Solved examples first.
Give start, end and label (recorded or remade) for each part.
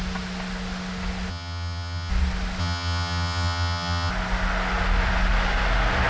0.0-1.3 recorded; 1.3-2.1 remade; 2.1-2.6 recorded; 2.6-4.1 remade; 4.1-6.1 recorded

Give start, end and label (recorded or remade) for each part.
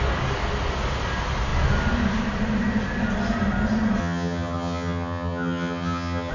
0.0-4.0 recorded; 4.0-6.3 remade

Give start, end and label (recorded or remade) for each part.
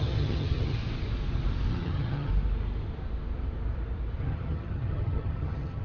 0.0-0.8 remade; 0.8-1.7 recorded; 1.7-2.3 remade; 2.3-4.2 recorded; 4.2-5.8 remade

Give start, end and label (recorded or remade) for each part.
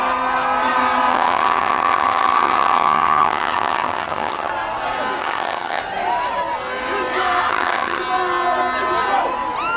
0.0-1.1 recorded; 1.1-4.5 remade; 4.5-5.2 recorded; 5.2-5.8 remade; 5.8-7.5 recorded; 7.5-8.0 remade; 8.0-9.8 recorded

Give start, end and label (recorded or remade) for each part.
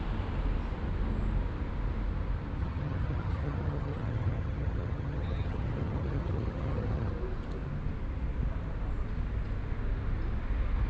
0.0-2.6 recorded; 2.6-7.1 remade; 7.1-10.9 recorded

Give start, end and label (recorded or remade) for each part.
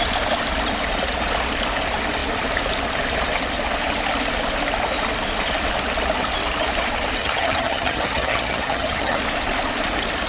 0.0-7.2 recorded; 7.2-9.2 remade; 9.2-10.3 recorded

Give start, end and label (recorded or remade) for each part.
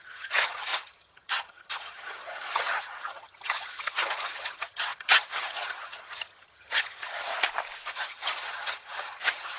0.0-7.3 remade; 7.3-7.9 recorded; 7.9-9.6 remade